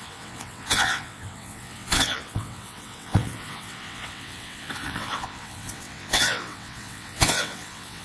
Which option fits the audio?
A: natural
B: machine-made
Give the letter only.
B